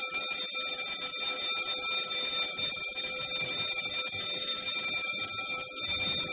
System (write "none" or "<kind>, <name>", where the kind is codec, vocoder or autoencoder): none